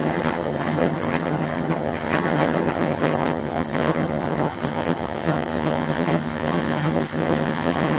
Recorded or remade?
remade